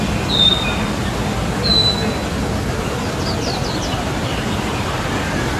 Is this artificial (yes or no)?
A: no